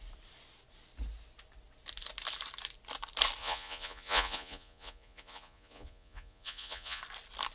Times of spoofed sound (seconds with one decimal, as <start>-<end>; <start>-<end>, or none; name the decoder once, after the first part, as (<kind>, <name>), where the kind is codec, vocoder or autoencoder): 3.4-7.0 (vocoder, Vocos)